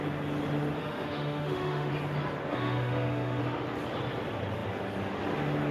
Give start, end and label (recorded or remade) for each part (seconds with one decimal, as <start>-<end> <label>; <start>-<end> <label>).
0.0-0.8 recorded; 0.8-1.9 remade; 1.9-2.5 recorded; 2.5-3.4 remade; 3.4-5.7 recorded